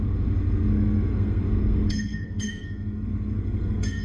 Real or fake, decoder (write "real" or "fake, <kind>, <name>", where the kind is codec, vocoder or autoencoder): fake, codec, SNAC